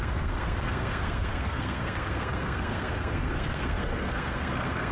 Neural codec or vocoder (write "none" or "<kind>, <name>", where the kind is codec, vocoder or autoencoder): codec, SNAC